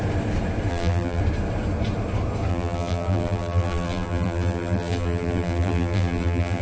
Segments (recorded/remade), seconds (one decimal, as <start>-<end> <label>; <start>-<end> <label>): 0.0-0.7 recorded; 0.7-1.2 remade; 1.2-2.5 recorded; 2.5-6.6 remade

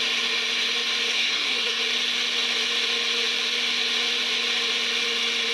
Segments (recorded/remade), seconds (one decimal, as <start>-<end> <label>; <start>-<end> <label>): 0.0-1.1 recorded; 1.1-1.8 remade; 1.8-5.5 recorded